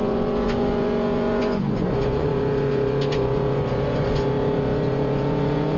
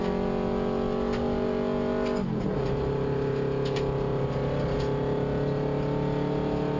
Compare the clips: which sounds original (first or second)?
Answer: second